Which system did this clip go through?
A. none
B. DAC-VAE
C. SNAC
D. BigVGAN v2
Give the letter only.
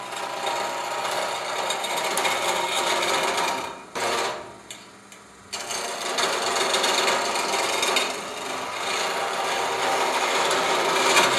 A